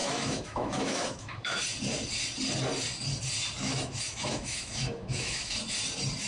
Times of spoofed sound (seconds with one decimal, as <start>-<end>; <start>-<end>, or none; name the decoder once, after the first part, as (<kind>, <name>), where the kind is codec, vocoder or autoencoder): 0.0-1.6 (autoencoder, DAC-VAE); 3.6-5.6